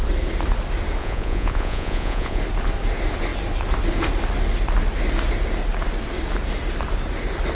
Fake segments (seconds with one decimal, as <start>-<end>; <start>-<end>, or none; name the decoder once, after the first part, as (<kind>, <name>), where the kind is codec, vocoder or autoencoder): 1.0-2.4 (vocoder, Vocos)